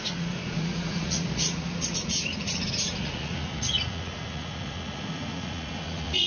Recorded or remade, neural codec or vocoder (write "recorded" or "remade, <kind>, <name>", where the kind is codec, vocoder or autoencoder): remade, vocoder, Vocos